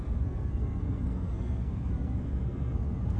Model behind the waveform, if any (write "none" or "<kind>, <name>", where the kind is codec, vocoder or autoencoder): codec, SNAC